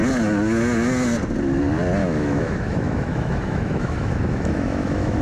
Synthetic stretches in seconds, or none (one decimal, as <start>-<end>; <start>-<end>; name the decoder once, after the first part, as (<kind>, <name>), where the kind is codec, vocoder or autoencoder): 2.0-5.2 (autoencoder, DAC-VAE)